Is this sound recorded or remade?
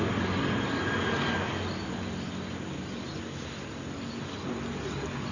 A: recorded